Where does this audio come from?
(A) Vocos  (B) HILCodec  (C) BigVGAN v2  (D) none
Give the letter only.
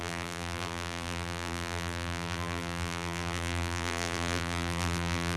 C